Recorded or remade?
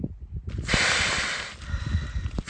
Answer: recorded